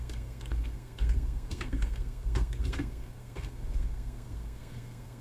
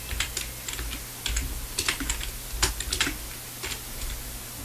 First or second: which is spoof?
first